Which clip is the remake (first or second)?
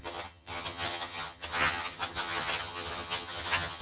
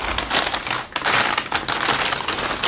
first